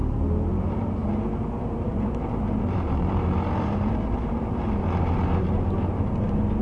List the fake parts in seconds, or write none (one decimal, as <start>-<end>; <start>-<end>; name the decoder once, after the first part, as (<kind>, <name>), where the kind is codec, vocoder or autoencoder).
0.5-1.0 (vocoder, BigVGAN v2); 1.5-6.6